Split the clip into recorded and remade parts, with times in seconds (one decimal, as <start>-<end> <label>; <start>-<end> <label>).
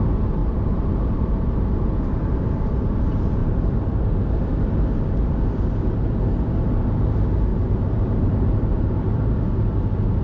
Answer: 0.0-0.4 recorded; 0.4-1.6 remade; 1.6-3.4 recorded; 3.4-4.8 remade; 4.8-7.5 recorded; 7.5-9.1 remade; 9.1-10.2 recorded